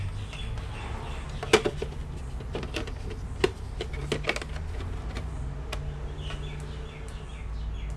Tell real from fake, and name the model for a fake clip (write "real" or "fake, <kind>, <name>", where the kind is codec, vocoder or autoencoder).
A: real